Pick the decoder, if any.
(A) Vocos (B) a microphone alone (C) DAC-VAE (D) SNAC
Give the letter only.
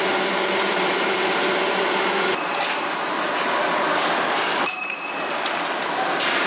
B